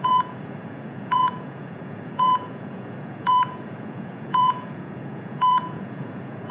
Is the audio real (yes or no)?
no